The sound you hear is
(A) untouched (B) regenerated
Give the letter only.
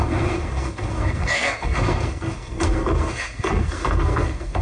B